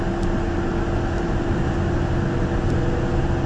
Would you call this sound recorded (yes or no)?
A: yes